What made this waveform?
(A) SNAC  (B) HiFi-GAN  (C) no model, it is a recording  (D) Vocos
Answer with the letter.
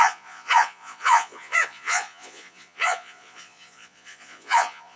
D